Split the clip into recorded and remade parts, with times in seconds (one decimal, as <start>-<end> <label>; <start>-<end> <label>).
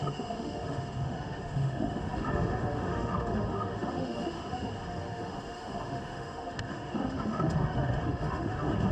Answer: 0.0-8.9 remade